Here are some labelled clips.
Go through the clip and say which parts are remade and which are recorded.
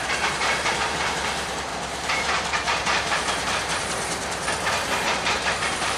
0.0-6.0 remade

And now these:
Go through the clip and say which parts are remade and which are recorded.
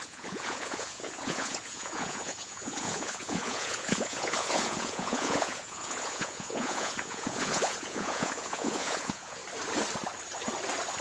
0.0-9.4 remade; 9.4-11.0 recorded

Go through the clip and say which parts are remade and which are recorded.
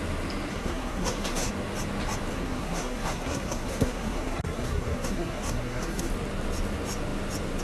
0.0-0.5 recorded; 0.5-1.5 remade; 1.5-2.3 recorded; 2.3-6.1 remade; 6.1-7.6 recorded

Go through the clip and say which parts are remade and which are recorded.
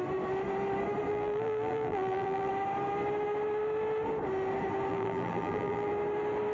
0.0-1.1 recorded; 1.1-2.5 remade; 2.5-4.9 recorded; 4.9-5.9 remade; 5.9-6.5 recorded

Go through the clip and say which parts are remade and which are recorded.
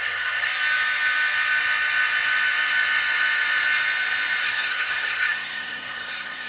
0.0-0.5 remade; 0.5-4.4 recorded; 4.4-6.5 remade